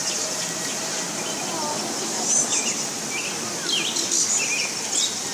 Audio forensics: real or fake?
real